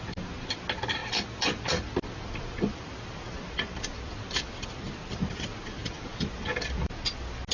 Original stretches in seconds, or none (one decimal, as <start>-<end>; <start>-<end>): 0.0-1.0; 5.3-5.8; 7.1-7.5